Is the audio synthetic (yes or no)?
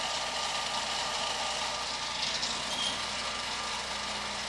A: no